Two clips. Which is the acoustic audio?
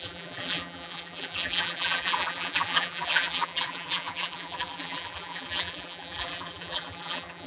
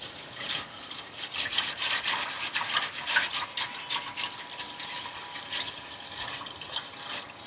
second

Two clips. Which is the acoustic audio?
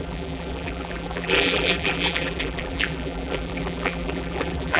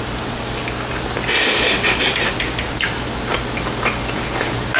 second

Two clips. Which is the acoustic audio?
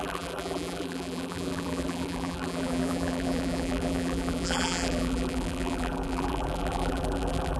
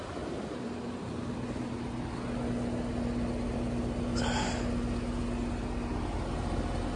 second